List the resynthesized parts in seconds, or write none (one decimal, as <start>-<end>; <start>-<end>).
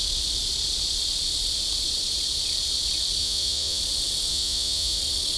3.2-3.8; 4.3-5.0